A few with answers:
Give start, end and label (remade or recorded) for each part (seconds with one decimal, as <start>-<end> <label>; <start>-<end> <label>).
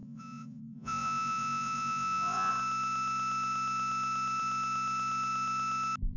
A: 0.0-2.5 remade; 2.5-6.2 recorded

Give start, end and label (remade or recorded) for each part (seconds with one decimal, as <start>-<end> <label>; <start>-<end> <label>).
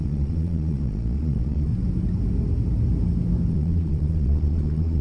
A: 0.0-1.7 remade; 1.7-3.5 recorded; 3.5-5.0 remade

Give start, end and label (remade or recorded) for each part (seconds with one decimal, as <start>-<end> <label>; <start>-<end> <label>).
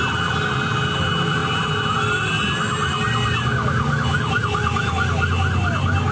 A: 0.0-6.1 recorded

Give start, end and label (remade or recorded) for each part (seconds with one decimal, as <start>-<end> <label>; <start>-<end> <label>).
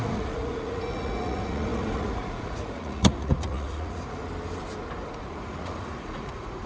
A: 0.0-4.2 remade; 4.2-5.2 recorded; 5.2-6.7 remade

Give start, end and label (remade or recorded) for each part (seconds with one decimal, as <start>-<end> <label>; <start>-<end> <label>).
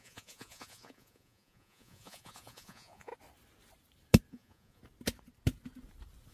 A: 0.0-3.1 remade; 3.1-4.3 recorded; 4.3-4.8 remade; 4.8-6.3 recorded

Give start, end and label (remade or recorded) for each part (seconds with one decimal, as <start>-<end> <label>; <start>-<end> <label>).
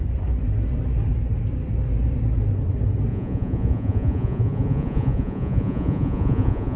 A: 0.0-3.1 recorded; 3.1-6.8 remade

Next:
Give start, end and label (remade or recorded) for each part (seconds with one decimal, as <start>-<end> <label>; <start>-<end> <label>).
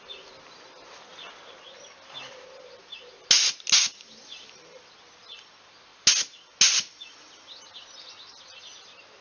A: 0.0-9.2 recorded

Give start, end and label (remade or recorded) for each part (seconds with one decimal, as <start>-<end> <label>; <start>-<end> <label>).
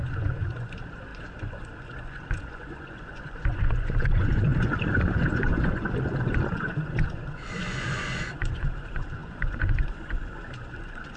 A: 0.0-11.2 remade